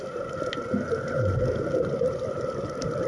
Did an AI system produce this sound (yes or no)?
no